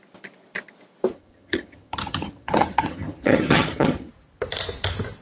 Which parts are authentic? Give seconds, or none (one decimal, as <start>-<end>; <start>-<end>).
0.0-1.1; 4.1-5.2